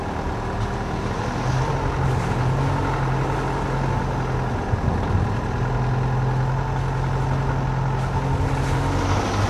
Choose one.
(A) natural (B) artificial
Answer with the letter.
A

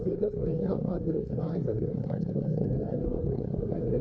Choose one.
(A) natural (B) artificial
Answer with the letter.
B